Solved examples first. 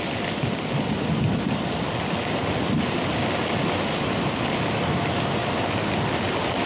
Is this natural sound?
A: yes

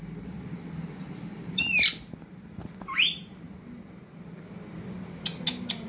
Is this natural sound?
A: yes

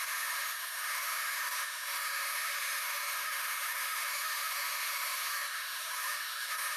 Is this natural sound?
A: no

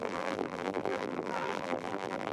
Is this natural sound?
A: no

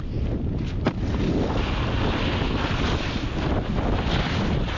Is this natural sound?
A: yes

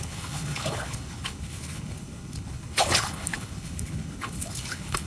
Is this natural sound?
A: no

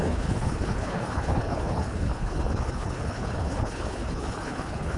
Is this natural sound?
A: no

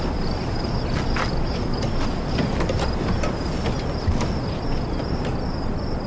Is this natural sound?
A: yes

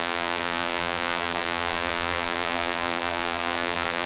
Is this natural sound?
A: no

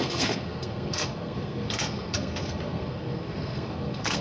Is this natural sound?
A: no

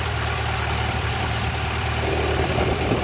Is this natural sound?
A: no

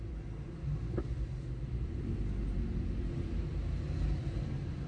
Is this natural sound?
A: yes